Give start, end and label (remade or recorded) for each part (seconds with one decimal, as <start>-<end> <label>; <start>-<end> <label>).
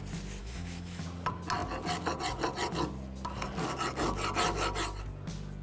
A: 0.0-0.4 recorded; 0.4-1.0 remade; 1.0-5.6 recorded